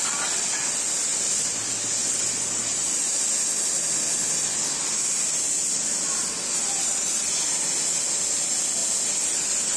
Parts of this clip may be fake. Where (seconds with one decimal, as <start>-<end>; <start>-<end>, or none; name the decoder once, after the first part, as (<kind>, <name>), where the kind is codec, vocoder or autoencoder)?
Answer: none